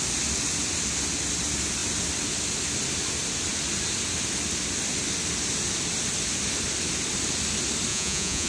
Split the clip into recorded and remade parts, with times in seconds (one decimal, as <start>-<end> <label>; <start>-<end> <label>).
0.0-7.9 recorded; 7.9-8.5 remade